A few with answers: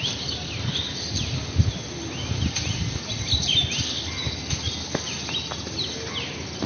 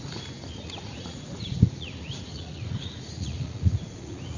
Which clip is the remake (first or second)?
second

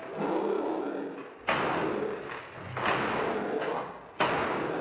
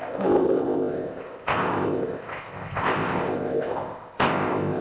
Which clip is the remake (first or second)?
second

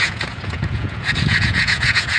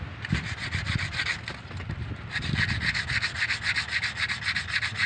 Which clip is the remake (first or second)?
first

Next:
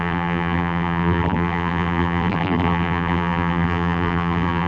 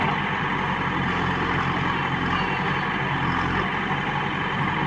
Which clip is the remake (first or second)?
first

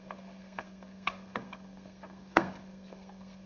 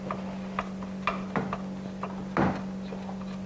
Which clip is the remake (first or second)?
first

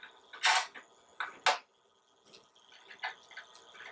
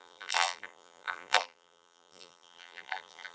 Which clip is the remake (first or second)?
second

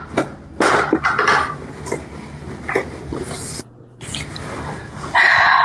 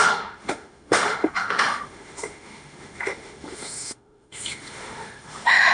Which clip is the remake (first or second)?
second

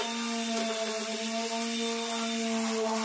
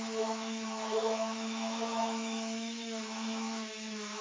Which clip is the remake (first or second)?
second